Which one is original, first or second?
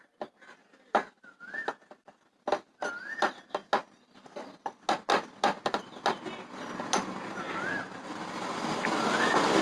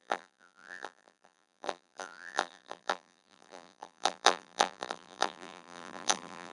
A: first